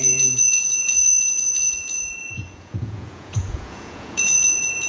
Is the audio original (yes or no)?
no